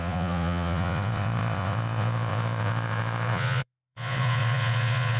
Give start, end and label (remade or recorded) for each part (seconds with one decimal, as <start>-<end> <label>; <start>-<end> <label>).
0.0-5.2 remade